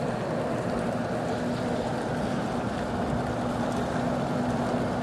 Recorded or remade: recorded